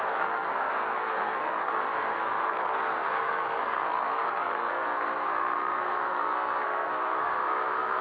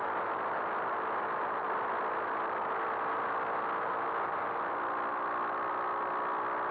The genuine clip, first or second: second